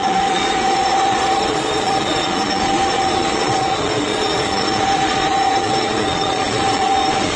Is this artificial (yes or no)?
yes